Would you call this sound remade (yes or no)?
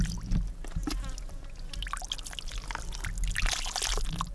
no